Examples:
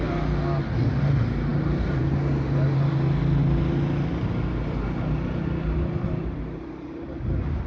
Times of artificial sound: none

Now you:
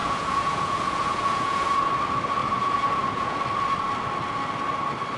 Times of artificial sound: 0.0-1.9 (vocoder, Vocos); 2.4-3.4